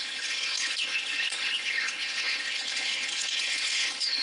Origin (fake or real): fake